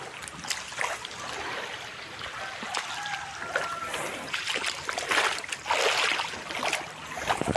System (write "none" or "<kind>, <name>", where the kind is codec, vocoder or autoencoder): none